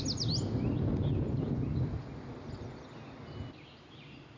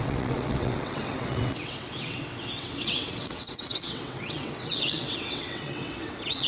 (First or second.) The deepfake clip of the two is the second